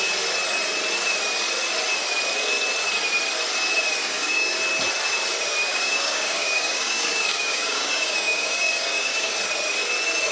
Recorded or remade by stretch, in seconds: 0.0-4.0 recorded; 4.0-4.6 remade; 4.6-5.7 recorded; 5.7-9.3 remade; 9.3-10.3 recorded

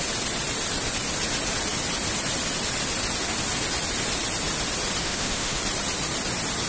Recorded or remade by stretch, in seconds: 0.0-5.0 recorded; 5.0-5.6 remade; 5.6-6.7 recorded

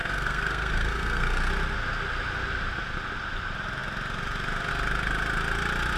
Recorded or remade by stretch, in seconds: 0.0-1.5 remade; 1.5-6.0 recorded

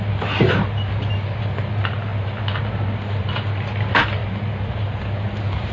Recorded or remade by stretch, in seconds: 0.0-5.7 recorded